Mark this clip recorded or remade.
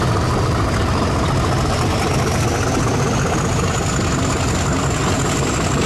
recorded